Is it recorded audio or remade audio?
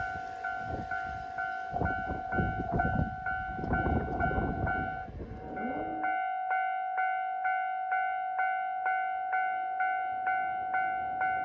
recorded